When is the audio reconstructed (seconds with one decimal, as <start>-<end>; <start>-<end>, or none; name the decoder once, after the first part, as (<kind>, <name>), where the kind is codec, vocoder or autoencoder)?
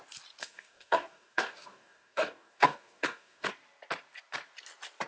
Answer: 0.4-3.5 (codec, DAC)